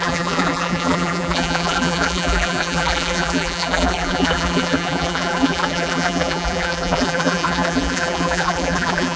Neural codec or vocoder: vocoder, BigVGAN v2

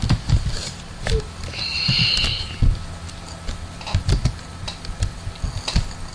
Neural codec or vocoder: none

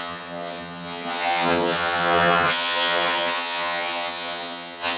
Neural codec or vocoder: vocoder, HiFi-GAN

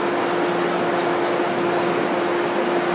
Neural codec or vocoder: none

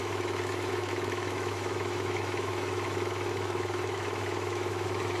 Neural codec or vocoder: autoencoder, DAC-VAE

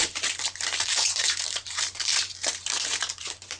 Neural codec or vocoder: vocoder, BigVGAN v2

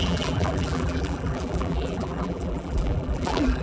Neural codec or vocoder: vocoder, BigVGAN v2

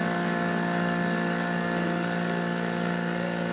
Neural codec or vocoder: codec, DAC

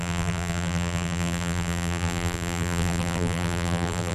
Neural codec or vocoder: vocoder, BigVGAN v2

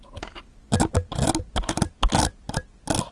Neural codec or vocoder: none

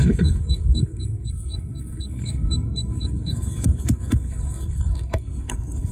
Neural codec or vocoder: codec, SNAC